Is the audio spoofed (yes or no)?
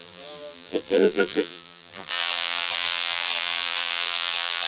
yes